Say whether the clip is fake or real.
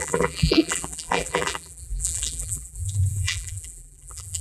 fake